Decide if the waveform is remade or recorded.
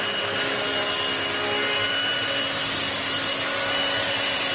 recorded